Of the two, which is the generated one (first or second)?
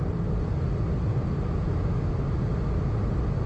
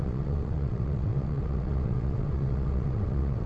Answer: second